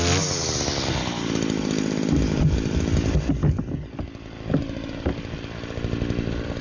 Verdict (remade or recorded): recorded